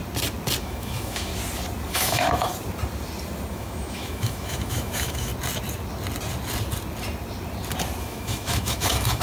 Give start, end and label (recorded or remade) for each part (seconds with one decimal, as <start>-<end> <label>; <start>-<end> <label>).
0.0-0.6 recorded; 0.6-1.3 remade; 1.3-1.9 recorded; 1.9-2.5 remade; 2.5-3.5 recorded; 3.5-5.3 remade; 5.3-8.0 recorded; 8.0-9.2 remade